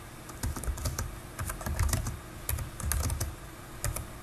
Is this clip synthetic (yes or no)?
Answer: no